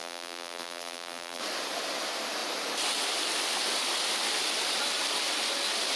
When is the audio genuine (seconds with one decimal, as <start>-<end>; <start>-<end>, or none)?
1.4-6.0